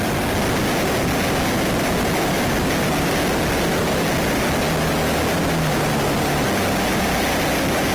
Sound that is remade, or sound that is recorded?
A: recorded